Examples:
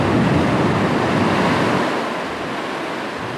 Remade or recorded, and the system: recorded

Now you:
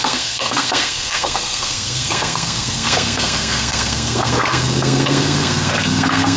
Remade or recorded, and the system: remade, codec, SNAC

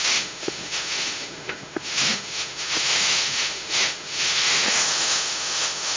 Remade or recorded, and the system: remade, autoencoder, DAC-VAE